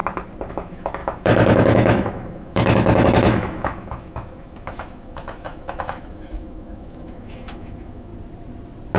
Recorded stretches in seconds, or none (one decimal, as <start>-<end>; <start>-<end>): 0.0-0.5; 8.1-9.0